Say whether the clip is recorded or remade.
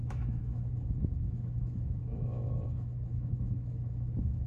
remade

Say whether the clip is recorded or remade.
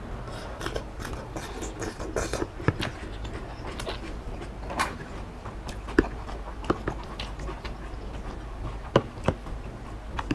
recorded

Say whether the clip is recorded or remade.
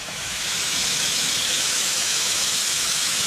remade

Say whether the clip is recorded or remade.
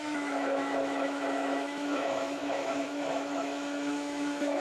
remade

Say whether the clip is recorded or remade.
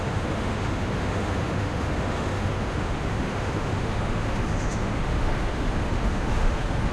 remade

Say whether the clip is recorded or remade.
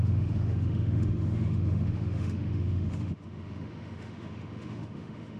remade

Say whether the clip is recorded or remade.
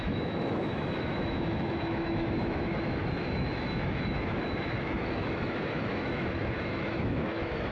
remade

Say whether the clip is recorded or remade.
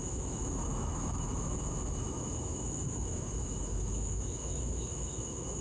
remade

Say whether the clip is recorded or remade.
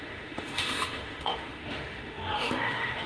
remade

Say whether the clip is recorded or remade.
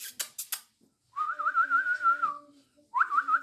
recorded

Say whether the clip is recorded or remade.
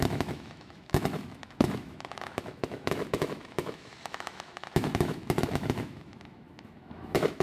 remade